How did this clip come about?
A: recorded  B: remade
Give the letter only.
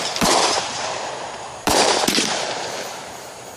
B